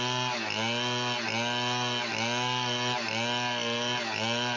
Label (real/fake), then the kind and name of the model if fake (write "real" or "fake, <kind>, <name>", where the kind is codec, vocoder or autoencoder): real